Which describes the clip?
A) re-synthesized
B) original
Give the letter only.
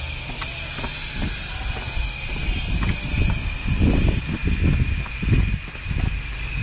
B